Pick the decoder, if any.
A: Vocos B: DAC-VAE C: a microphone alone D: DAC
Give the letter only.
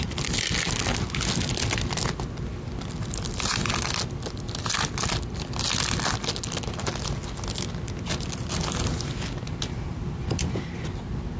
C